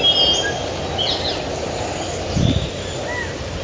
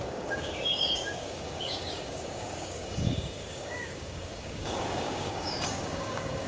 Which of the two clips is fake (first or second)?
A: second